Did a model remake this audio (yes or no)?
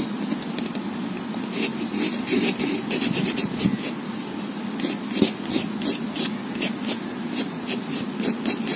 no